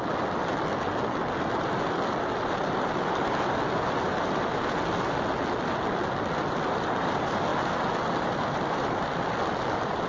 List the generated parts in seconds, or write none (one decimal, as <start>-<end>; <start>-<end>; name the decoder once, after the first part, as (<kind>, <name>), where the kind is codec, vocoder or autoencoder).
none